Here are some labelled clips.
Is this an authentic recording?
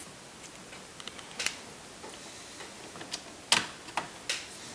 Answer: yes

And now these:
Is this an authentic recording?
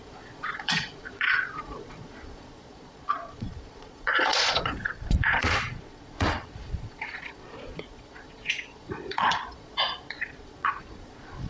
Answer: no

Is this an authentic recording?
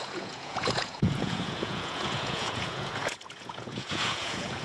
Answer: no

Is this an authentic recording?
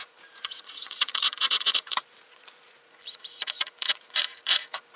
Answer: no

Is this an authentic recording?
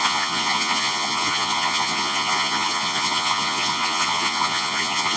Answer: no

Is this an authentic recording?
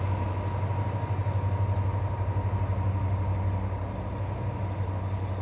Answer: yes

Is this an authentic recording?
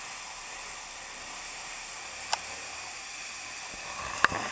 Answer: yes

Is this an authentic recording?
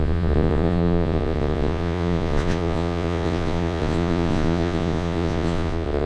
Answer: no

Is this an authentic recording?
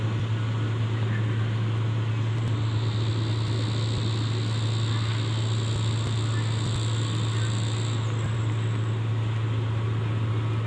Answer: yes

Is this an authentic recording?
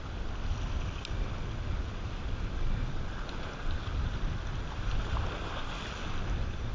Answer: yes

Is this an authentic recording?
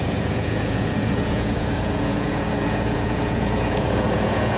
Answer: no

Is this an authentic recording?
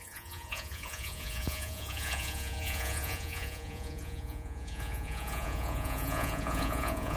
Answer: no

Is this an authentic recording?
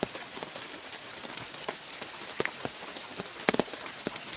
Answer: yes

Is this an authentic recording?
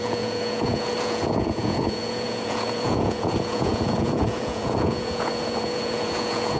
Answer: no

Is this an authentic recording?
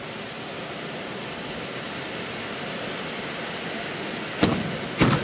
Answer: yes